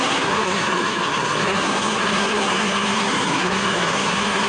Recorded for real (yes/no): no